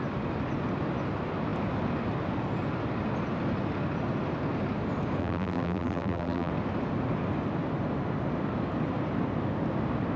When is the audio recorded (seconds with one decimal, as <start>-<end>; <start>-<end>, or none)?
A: 0.0-5.2; 6.5-10.2